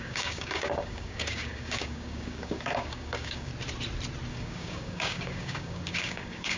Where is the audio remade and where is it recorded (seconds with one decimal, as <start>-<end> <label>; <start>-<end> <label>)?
0.0-3.5 remade; 3.5-4.3 recorded; 4.3-6.6 remade